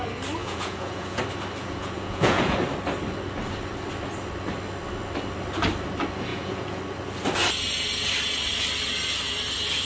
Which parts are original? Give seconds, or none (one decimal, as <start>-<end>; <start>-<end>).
0.0-0.4; 1.2-1.6; 2.6-6.3; 6.8-9.8